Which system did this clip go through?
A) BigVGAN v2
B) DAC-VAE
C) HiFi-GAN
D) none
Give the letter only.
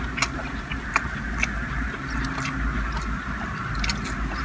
D